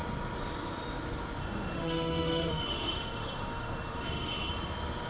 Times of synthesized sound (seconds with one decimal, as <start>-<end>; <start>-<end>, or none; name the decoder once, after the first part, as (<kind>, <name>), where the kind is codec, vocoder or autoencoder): 1.4-4.5 (autoencoder, DAC-VAE)